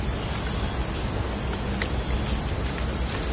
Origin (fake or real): real